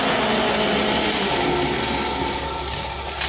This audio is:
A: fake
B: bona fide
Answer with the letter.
B